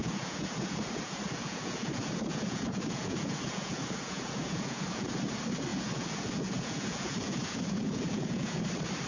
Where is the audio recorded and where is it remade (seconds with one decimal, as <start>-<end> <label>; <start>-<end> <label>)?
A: 0.0-5.2 remade; 5.2-5.7 recorded; 5.7-8.6 remade; 8.6-9.1 recorded